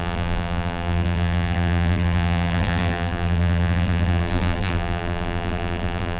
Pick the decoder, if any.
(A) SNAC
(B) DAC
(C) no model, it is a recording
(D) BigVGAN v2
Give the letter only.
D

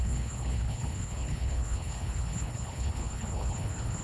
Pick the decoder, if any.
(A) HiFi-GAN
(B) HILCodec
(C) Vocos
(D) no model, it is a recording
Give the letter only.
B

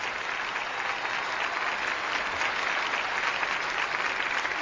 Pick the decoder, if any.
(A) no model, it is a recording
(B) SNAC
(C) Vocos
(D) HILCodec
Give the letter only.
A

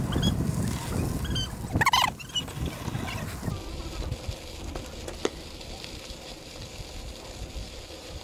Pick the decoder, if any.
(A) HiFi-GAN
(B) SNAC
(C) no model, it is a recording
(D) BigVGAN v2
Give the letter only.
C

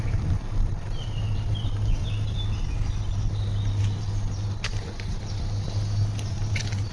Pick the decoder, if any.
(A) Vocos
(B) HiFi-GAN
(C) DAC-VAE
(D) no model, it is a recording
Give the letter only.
D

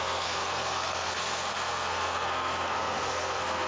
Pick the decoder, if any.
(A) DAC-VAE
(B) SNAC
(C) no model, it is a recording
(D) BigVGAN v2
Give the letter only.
B